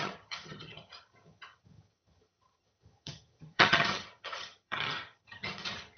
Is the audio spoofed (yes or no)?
yes